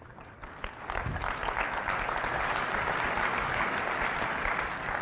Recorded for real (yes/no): yes